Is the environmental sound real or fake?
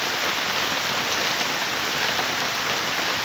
real